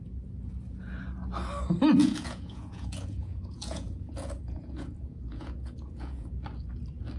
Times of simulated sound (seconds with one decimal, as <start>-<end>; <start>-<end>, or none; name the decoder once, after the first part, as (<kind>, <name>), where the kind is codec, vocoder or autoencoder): 2.0-6.3 (vocoder, Vocos)